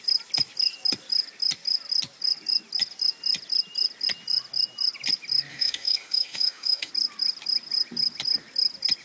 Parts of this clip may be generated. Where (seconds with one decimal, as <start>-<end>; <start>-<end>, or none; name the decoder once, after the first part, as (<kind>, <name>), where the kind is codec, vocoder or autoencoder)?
5.5-6.9 (autoencoder, DAC-VAE)

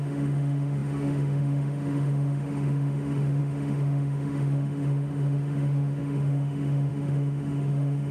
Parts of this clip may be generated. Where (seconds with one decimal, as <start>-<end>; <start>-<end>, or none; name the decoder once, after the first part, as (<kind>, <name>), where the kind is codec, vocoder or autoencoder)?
0.0-8.1 (autoencoder, DAC-VAE)

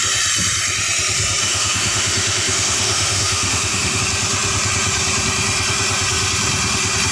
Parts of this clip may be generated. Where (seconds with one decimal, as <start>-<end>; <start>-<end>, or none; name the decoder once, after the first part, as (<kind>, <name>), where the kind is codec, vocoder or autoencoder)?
1.4-4.0 (autoencoder, DAC-VAE)